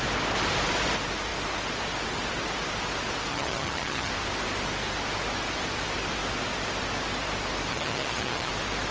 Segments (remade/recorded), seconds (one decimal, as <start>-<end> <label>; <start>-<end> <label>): 0.0-3.3 recorded; 3.3-4.1 remade; 4.1-7.7 recorded; 7.7-8.5 remade; 8.5-8.9 recorded